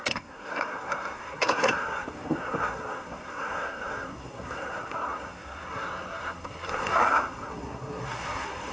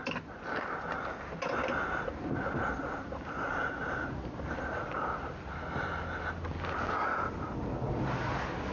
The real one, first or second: second